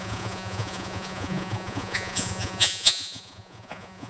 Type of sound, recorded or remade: remade